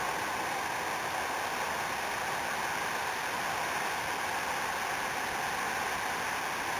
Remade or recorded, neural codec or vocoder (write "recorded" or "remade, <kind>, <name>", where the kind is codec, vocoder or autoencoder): recorded